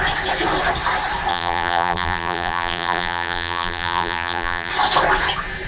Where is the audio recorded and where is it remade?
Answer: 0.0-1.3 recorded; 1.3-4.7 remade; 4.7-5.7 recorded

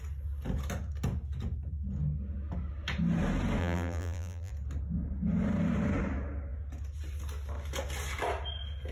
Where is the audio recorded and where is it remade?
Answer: 0.0-3.6 recorded; 3.6-4.5 remade; 4.5-8.9 recorded

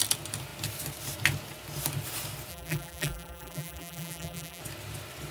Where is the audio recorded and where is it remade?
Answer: 0.0-2.5 recorded; 2.5-4.6 remade; 4.6-5.3 recorded

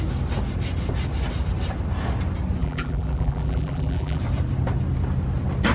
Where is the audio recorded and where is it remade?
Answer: 0.0-2.6 recorded; 2.6-4.2 remade; 4.2-5.7 recorded

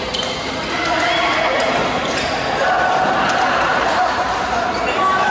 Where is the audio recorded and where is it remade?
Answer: 0.0-3.7 recorded; 3.7-4.2 remade; 4.2-5.3 recorded

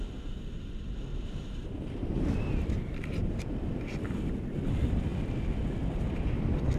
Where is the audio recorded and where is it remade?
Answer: 0.0-1.1 recorded; 1.1-4.3 remade; 4.3-6.8 recorded

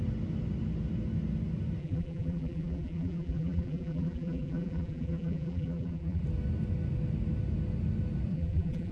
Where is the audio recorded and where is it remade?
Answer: 0.0-1.8 recorded; 1.8-6.2 remade; 6.2-8.3 recorded; 8.3-8.9 remade